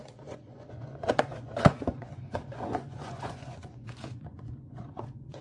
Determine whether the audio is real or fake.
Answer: fake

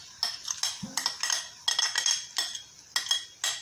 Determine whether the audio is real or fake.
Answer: real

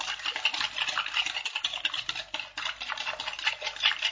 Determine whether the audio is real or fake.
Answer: real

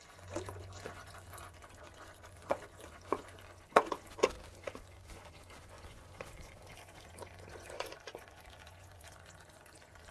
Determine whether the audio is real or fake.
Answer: fake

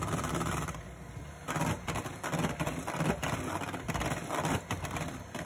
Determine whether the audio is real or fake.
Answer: real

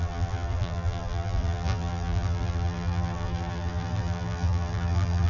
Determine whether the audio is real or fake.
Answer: fake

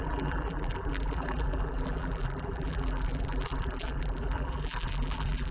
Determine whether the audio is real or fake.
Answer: fake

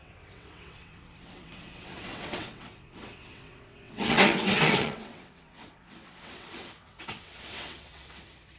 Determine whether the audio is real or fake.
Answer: fake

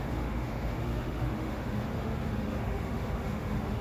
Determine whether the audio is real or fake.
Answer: fake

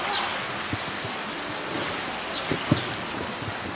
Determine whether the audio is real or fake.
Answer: real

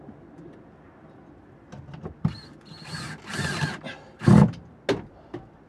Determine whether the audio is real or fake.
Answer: real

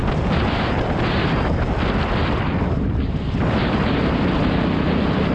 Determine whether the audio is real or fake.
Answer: real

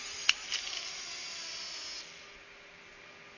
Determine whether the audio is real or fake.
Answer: real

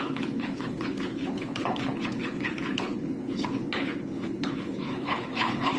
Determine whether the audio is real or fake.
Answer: fake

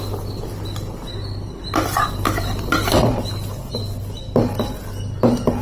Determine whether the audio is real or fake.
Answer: real